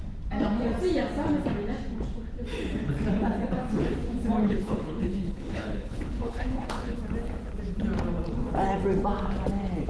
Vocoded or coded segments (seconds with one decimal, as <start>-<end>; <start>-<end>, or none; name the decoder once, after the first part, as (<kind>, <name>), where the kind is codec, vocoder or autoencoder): 4.4-7.0 (codec, HILCodec)